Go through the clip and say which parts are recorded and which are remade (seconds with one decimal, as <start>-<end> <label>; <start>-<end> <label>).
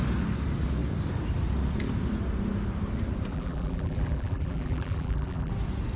0.0-3.3 recorded; 3.3-5.5 remade; 5.5-6.0 recorded